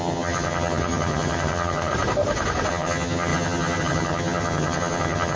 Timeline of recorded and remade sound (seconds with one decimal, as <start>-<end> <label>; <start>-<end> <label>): 0.0-1.9 remade; 1.9-2.7 recorded; 2.7-5.4 remade